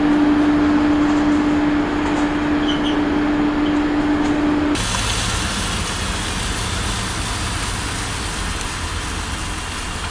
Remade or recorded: recorded